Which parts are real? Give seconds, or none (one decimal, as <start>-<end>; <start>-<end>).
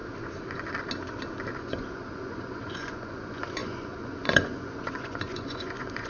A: 0.0-1.5